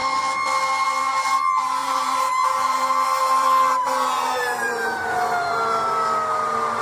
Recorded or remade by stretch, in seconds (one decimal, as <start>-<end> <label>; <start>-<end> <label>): 0.0-1.8 recorded; 1.8-5.9 remade; 5.9-6.8 recorded